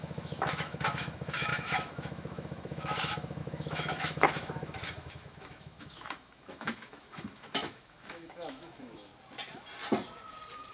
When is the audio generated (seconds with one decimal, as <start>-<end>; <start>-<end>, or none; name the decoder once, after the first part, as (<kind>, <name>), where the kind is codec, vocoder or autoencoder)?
0.0-9.1 (autoencoder, DAC-VAE)